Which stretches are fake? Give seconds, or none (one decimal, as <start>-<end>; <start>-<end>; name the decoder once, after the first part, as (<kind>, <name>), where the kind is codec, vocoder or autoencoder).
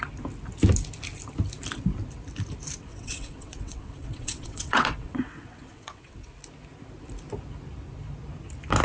2.9-6.3 (vocoder, WaveNeXt)